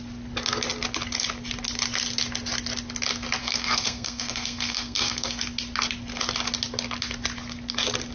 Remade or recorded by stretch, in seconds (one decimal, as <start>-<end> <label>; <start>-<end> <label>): 0.0-3.4 recorded; 3.4-5.4 remade; 5.4-8.1 recorded